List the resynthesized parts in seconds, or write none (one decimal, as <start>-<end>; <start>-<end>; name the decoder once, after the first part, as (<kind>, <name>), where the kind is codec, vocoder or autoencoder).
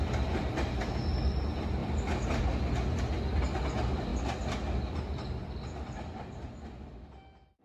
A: none